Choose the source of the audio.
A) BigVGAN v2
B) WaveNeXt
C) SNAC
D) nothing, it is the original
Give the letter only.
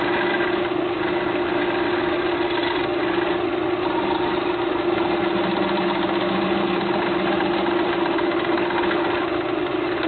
D